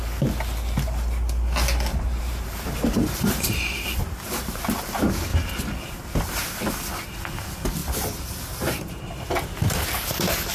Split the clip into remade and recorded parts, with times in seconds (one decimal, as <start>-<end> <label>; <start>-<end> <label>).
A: 0.0-1.9 recorded; 1.9-3.8 remade; 3.8-10.5 recorded